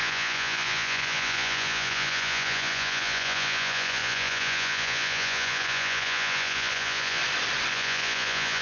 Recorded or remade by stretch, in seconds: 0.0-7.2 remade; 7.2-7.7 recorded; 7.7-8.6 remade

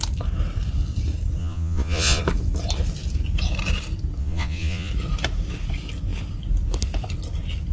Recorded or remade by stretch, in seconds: 0.0-1.4 recorded; 1.4-2.2 remade; 2.2-4.2 recorded; 4.2-4.9 remade; 4.9-7.7 recorded

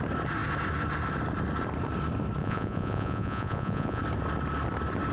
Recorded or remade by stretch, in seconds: 0.0-2.4 recorded; 2.4-4.0 remade; 4.0-5.1 recorded

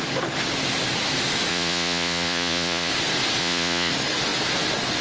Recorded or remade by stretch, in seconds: 0.0-1.5 recorded; 1.5-2.9 remade; 2.9-3.4 recorded; 3.4-3.9 remade; 3.9-5.0 recorded

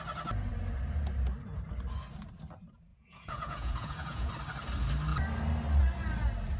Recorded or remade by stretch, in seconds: 0.0-2.9 recorded; 2.9-4.3 remade; 4.3-6.6 recorded

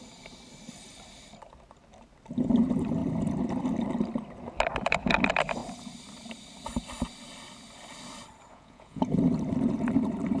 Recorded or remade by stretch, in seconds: 0.0-8.5 recorded; 8.5-9.0 remade; 9.0-10.4 recorded

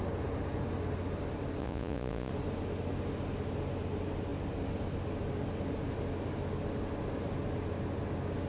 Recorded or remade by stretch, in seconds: 0.0-1.6 recorded; 1.6-2.3 remade; 2.3-8.5 recorded

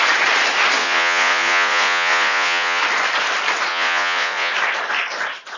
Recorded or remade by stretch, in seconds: 0.0-0.8 recorded; 0.8-2.8 remade; 2.8-3.7 recorded; 3.7-4.5 remade; 4.5-5.6 recorded